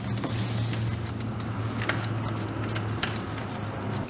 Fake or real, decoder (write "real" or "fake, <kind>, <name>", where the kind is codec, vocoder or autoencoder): real